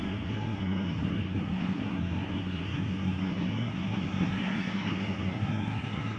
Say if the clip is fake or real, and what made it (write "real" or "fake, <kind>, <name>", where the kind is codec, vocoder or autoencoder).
fake, codec, SNAC